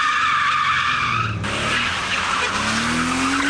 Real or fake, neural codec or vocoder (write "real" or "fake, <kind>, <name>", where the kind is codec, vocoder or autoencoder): real